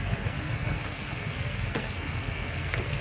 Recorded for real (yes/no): no